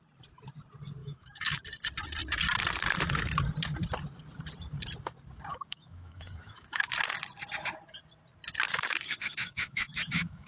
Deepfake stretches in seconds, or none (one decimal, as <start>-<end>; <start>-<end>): 1.0-1.6; 5.5-6.9; 8.7-10.5